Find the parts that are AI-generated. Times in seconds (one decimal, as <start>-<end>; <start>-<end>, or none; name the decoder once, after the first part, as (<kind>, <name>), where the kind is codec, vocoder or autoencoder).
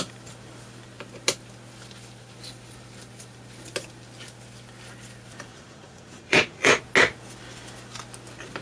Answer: 5.5-6.8 (vocoder, Vocos)